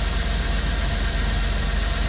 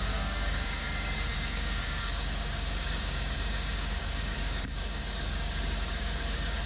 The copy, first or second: second